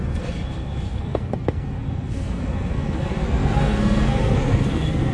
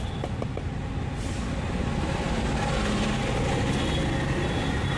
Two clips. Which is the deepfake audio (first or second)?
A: first